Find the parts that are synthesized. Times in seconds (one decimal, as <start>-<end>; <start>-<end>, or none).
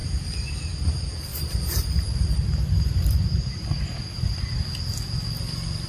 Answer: 1.3-4.6